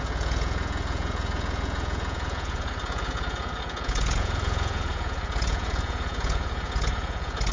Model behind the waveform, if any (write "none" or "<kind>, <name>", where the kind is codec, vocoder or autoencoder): vocoder, Vocos